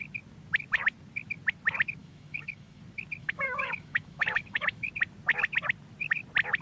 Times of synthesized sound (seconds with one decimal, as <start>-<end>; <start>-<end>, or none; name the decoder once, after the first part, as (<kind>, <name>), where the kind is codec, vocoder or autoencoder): 2.0-2.8 (autoencoder, DAC-VAE); 3.2-4.9